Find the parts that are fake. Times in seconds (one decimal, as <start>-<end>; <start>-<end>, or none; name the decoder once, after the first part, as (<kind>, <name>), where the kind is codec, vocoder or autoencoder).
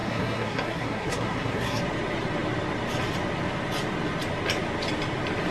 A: 0.0-1.8 (codec, SNAC)